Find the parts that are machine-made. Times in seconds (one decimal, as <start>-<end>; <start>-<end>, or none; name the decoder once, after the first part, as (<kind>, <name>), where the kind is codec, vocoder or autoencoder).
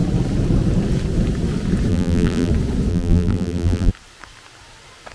1.9-2.5 (vocoder, BigVGAN v2); 2.9-3.9